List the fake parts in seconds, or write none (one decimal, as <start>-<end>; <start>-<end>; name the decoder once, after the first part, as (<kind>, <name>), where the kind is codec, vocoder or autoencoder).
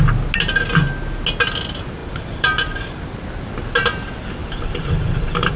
2.0-3.0 (vocoder, BigVGAN v2); 4.4-5.6